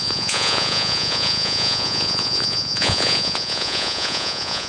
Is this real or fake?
fake